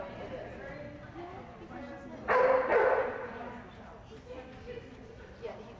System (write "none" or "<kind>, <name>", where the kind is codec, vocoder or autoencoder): none